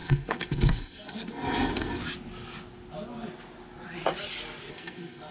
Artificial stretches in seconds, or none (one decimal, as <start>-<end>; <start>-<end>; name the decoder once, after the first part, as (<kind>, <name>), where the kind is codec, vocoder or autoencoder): 0.0-2.0 (codec, SNAC); 4.7-5.3